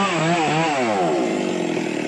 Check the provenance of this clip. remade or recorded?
recorded